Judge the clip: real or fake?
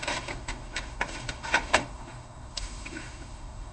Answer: fake